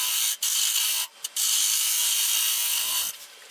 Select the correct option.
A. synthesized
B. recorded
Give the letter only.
B